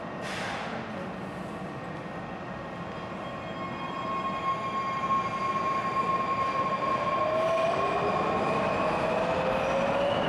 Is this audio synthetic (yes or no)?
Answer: no